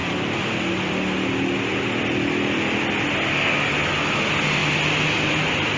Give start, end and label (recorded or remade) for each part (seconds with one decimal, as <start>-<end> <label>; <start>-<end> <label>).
0.0-5.8 recorded